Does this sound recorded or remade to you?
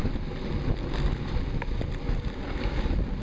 recorded